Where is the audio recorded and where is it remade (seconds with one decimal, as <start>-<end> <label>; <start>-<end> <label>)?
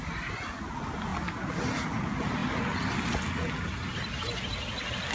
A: 0.0-5.1 recorded